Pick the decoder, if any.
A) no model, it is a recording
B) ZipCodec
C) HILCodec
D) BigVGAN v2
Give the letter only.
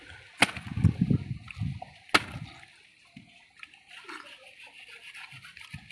A